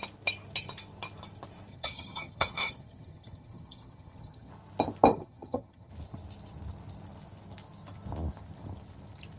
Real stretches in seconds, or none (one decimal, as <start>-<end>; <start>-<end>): 0.0-1.7; 4.5-5.1; 5.9-9.4